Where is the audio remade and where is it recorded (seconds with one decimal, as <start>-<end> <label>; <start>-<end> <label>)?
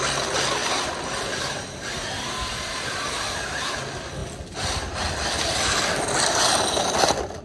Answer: 0.0-0.6 recorded; 0.6-3.7 remade; 3.7-4.2 recorded; 4.2-6.0 remade; 6.0-7.4 recorded